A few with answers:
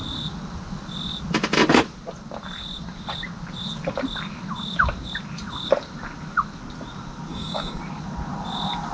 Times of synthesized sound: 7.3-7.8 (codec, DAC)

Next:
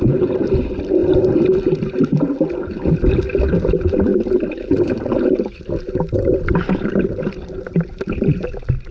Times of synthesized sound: none

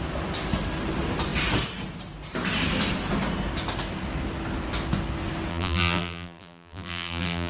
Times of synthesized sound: 5.5-7.5 (vocoder, BigVGAN v2)

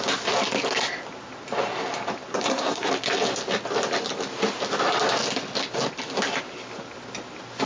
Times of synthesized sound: 2.3-2.9 (codec, SNAC)

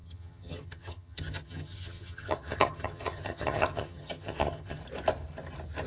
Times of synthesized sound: 0.0-4.8 (vocoder, HiFi-GAN)

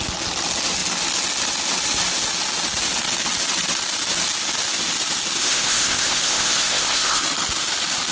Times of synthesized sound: 5.4-7.2 (codec, ZipCodec)

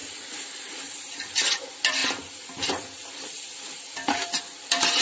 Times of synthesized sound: 0.0-1.6 (vocoder, BigVGAN v2); 2.0-4.4

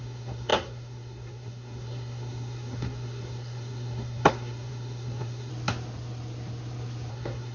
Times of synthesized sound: 0.0-5.5 (codec, SNAC); 7.1-7.5